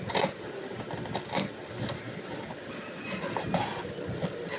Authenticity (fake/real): real